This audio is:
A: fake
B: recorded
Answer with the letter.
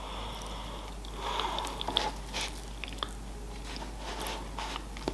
B